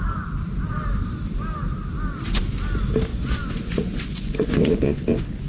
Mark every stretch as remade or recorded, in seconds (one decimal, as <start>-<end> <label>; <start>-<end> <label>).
0.0-3.1 recorded; 3.1-5.0 remade; 5.0-5.5 recorded